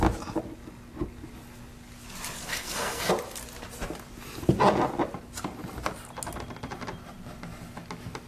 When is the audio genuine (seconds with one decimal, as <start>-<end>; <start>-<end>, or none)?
0.0-2.5; 3.1-8.3